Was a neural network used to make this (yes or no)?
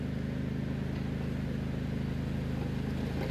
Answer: no